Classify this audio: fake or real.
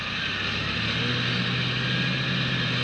real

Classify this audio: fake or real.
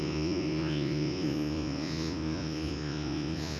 fake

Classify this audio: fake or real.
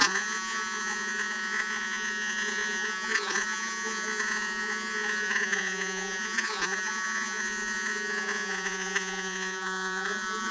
fake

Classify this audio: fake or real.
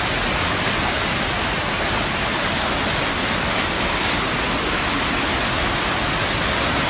real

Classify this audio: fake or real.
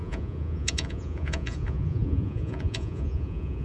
fake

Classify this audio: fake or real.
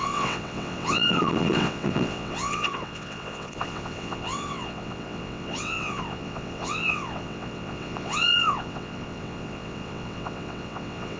fake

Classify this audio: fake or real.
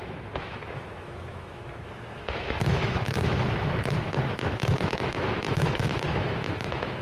fake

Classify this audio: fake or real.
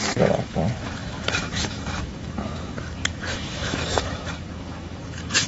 fake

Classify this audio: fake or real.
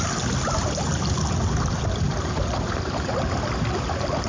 real